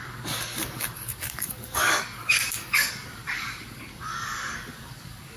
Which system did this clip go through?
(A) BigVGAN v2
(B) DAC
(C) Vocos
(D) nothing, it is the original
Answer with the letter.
B